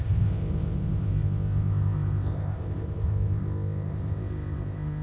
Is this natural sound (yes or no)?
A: no